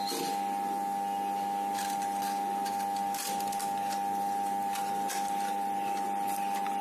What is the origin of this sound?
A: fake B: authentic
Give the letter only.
B